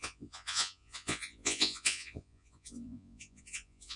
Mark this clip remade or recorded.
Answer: remade